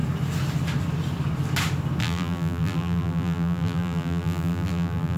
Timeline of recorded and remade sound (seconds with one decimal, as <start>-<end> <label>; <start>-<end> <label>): 0.0-2.0 recorded; 2.0-5.2 remade